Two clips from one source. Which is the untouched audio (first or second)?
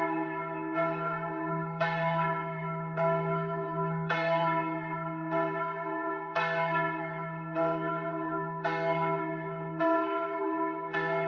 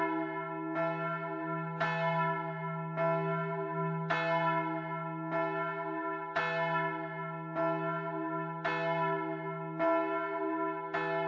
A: second